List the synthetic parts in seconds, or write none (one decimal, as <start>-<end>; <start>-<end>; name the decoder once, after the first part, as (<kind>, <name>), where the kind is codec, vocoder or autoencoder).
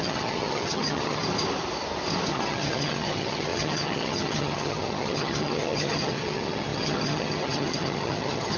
0.0-1.2 (vocoder, HiFi-GAN); 2.3-8.6